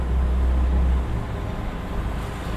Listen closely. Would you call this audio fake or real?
real